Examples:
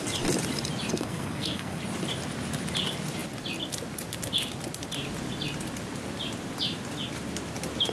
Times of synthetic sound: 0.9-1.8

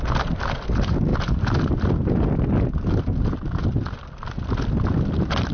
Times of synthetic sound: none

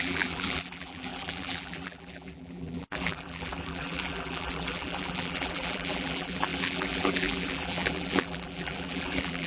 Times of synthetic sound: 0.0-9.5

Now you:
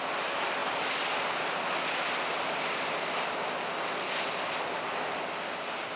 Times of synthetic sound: none

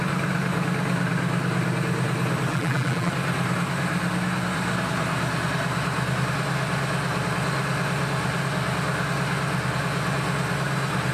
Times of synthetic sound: 2.5-3.1

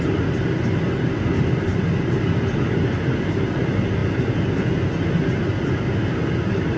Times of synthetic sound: none

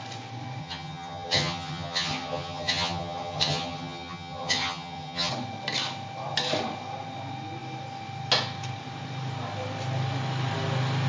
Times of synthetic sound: 0.6-5.3